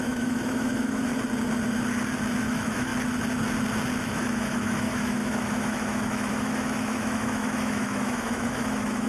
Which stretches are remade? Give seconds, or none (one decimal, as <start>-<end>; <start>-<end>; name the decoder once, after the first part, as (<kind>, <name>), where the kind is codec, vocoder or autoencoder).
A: 0.0-1.1 (autoencoder, DAC-VAE); 2.4-2.9; 4.0-9.1